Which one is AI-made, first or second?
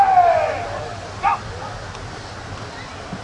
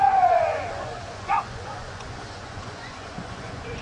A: second